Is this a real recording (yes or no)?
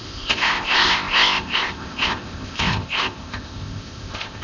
no